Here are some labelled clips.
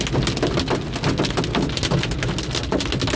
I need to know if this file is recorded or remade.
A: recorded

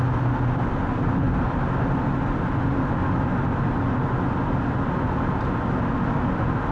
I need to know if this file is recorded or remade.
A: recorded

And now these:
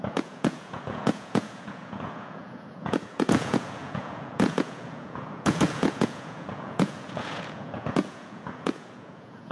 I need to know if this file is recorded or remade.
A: remade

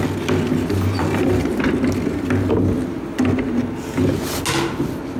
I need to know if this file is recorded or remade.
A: recorded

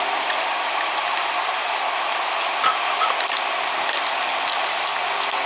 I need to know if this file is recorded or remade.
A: recorded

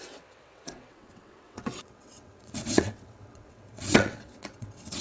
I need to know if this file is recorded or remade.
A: remade